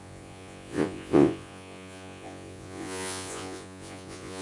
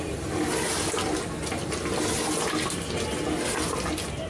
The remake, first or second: first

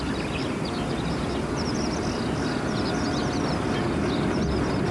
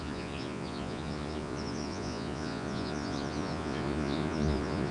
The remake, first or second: second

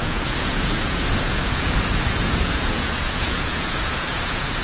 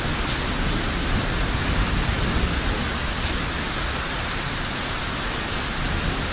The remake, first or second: first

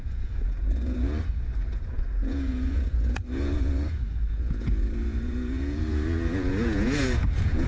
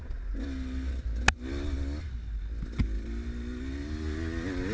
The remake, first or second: first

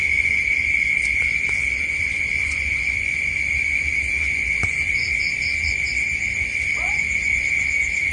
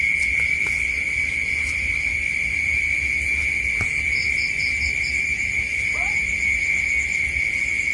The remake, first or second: first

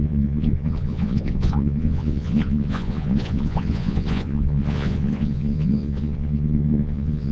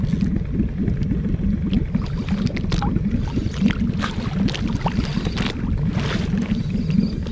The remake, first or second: first